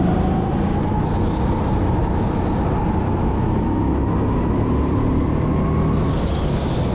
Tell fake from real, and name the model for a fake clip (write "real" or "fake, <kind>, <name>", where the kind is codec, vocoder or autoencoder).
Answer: real